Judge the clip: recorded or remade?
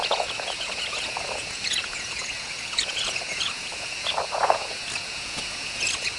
remade